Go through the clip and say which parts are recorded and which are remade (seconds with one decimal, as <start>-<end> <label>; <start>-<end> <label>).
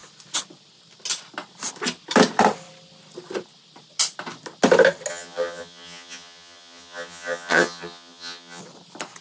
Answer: 0.0-5.1 recorded; 5.1-8.6 remade; 8.6-9.2 recorded